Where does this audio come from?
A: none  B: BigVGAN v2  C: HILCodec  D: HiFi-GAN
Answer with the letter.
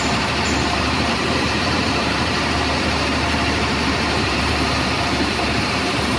B